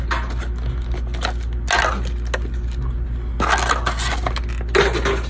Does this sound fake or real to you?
real